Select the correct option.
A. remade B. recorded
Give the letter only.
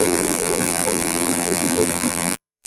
A